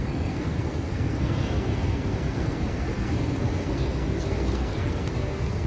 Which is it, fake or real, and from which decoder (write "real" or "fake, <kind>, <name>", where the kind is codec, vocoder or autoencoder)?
fake, codec, SNAC